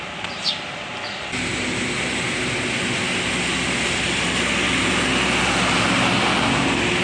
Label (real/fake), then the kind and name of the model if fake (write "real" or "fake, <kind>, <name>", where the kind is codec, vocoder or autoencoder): real